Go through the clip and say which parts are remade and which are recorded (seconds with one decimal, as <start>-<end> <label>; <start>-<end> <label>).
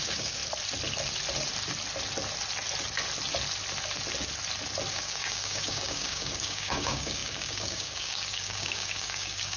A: 0.0-0.4 remade; 0.4-4.9 recorded; 4.9-9.6 remade